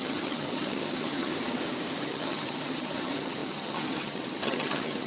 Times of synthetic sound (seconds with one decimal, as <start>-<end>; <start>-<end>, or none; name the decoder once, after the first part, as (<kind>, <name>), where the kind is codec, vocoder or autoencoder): 0.0-1.3 (vocoder, HiFi-GAN); 2.0-5.1